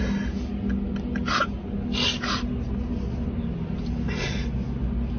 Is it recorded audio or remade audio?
recorded